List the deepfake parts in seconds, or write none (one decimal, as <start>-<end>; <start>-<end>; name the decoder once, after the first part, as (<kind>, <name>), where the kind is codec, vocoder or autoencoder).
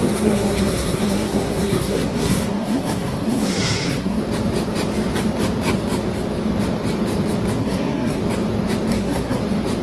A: 0.0-4.2 (codec, SNAC); 7.6-8.2; 8.9-9.4